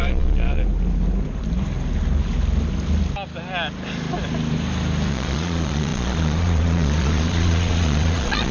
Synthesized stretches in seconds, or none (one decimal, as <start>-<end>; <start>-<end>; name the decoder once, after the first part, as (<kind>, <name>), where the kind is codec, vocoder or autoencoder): 0.0-0.6 (vocoder, Vocos); 5.1-8.5